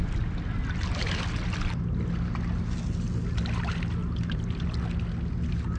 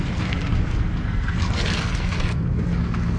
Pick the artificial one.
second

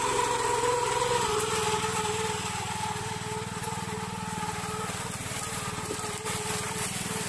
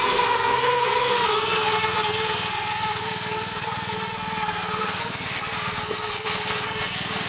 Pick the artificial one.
second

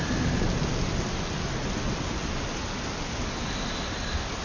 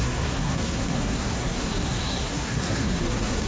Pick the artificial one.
second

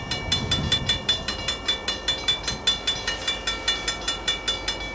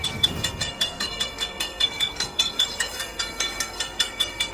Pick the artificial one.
second